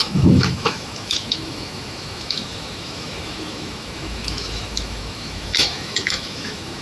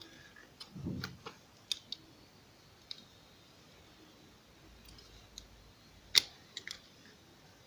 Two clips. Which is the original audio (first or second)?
second